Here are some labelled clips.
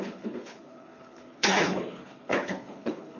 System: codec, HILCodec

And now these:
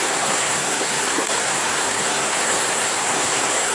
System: codec, SNAC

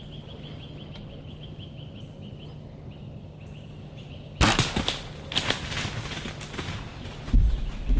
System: none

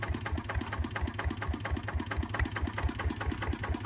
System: none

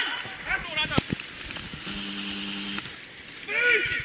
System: none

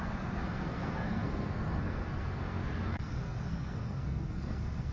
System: codec, SNAC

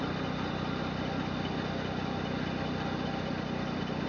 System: none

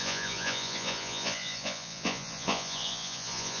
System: vocoder, Vocos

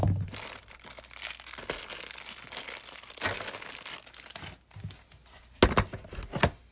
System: none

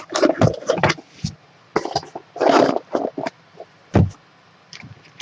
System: none